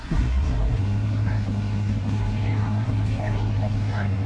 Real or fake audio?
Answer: fake